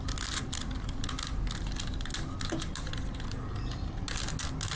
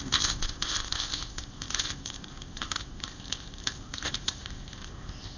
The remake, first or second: second